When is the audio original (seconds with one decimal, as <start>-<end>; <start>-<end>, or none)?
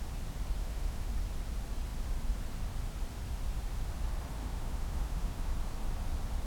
0.0-0.6; 1.1-4.4; 5.5-6.5